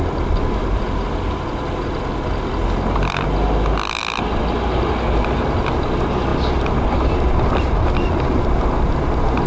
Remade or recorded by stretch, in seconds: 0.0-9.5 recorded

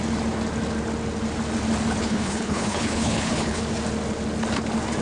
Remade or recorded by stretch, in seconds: 0.0-2.0 recorded; 2.0-3.6 remade; 3.6-5.0 recorded